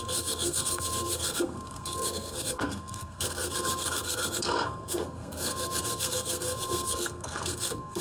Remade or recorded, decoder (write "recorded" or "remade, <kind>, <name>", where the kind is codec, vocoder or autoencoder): remade, codec, SNAC